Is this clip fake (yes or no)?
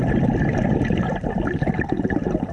no